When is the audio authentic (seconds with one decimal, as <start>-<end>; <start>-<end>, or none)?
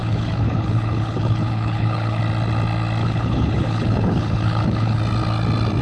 2.2-3.0; 5.0-5.8